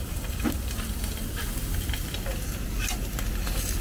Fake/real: real